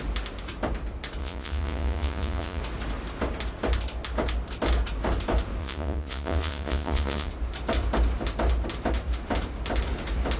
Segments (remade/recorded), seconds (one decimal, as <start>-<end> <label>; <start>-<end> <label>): 0.0-1.2 recorded; 1.2-2.6 remade; 2.6-5.6 recorded; 5.6-7.3 remade; 7.3-10.4 recorded